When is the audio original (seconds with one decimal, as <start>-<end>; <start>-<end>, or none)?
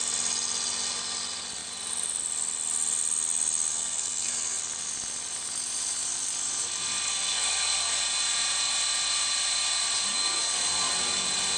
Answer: 0.0-3.7; 4.6-7.1; 8.0-10.1; 11.0-11.6